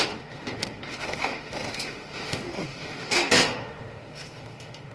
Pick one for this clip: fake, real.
fake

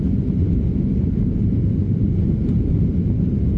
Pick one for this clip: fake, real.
fake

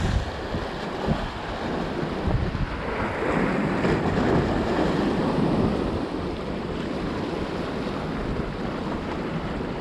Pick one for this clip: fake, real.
real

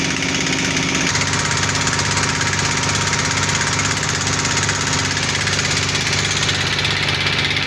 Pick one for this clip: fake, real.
real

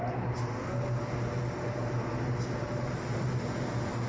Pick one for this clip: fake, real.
real